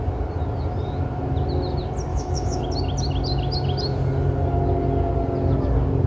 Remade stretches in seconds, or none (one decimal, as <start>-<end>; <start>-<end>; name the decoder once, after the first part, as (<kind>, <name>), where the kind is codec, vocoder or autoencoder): 2.1-2.6 (autoencoder, DAC-VAE)